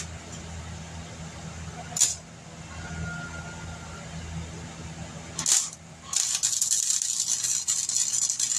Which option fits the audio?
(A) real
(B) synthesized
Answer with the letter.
A